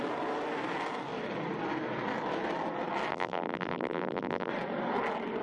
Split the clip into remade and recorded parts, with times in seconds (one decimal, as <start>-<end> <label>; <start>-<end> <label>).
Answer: 0.0-3.1 recorded; 3.1-4.5 remade; 4.5-5.4 recorded